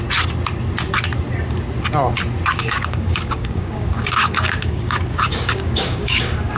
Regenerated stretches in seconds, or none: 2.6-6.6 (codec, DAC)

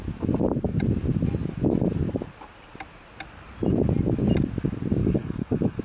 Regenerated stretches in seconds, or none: 5.0-5.8 (codec, DAC)

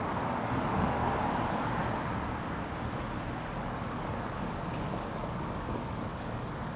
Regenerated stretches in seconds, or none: 0.0-1.8 (codec, DAC); 3.4-6.8

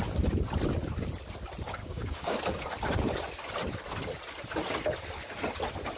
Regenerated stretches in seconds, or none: 1.8-2.4 (codec, DAC)

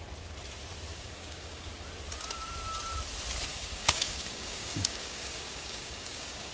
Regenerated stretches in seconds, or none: 0.9-1.7 (codec, DAC); 3.5-6.5

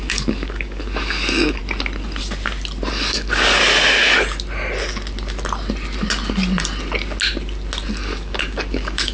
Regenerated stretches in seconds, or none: 0.0-1.6 (codec, DAC); 2.9-3.6; 7.9-9.1

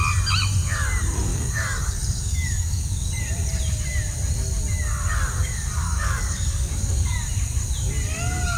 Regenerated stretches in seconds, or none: 1.3-3.2 (codec, DAC); 5.4-7.1

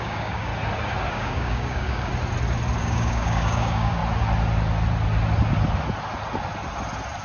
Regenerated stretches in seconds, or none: 0.0-0.5 (codec, DAC); 1.1-2.1; 2.8-4.0